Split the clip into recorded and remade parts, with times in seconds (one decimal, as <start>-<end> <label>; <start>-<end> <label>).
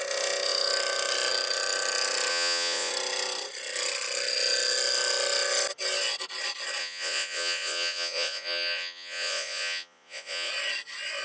0.0-2.3 recorded; 2.3-2.9 remade; 2.9-6.8 recorded; 6.8-10.5 remade; 10.5-11.2 recorded